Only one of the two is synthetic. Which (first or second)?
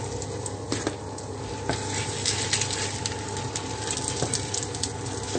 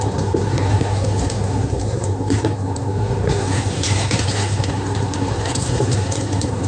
second